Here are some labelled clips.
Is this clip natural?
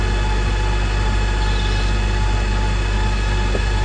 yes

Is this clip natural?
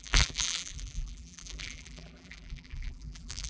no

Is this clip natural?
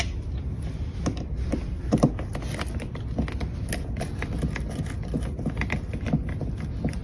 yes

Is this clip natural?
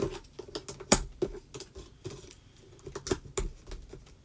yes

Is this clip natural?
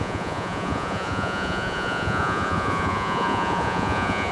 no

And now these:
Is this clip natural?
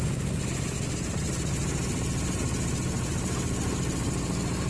yes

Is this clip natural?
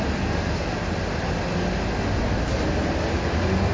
yes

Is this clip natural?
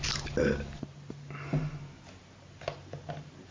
yes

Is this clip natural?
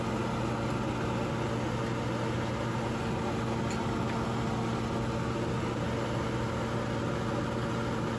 yes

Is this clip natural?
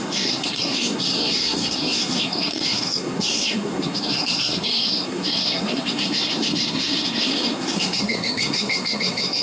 no